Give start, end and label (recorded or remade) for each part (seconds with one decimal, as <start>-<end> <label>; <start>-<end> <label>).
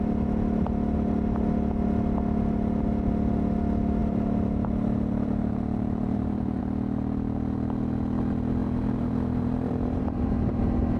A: 0.0-4.0 recorded; 4.0-6.6 remade; 6.6-8.6 recorded; 8.6-10.6 remade; 10.6-11.0 recorded